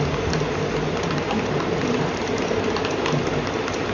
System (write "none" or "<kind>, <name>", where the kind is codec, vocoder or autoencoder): none